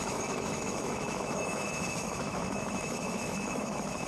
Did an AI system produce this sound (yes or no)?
yes